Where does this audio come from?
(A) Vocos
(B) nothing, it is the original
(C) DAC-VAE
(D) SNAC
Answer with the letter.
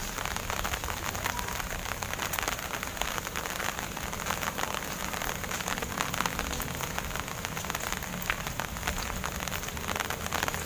B